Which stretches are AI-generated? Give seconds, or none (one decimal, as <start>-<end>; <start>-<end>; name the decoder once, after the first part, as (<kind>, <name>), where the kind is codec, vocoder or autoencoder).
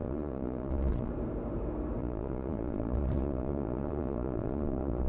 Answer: 0.0-1.1 (vocoder, Vocos); 2.0-5.1